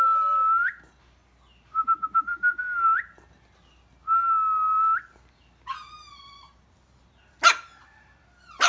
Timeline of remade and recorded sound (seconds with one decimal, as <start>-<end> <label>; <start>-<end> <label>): 0.0-8.7 recorded